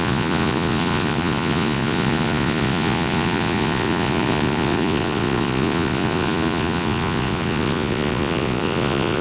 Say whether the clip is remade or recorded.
remade